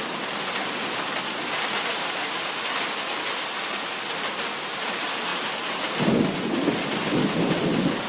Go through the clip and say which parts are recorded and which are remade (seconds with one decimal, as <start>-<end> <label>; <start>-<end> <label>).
0.0-8.1 recorded